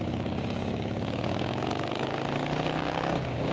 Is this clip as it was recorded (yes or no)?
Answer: no